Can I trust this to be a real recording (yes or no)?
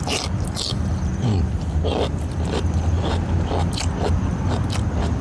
yes